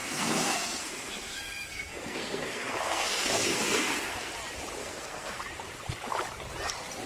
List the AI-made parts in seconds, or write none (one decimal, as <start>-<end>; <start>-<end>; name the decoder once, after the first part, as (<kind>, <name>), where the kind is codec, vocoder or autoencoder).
0.0-4.3 (codec, SNAC); 4.8-5.4